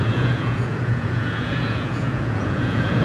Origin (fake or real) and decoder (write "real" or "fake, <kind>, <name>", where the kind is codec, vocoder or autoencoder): fake, vocoder, Vocos